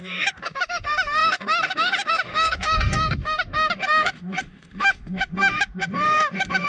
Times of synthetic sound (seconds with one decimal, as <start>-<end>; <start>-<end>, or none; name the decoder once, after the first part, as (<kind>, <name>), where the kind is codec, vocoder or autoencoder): 0.0-6.7 (autoencoder, DAC-VAE)